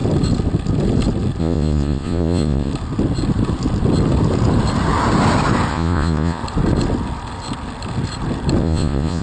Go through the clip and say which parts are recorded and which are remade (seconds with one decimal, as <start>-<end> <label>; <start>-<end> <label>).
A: 0.0-1.4 recorded; 1.4-2.7 remade; 2.7-5.7 recorded; 5.7-6.4 remade; 6.4-8.6 recorded; 8.6-9.2 remade